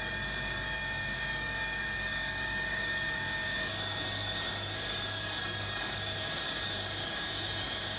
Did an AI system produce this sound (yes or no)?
yes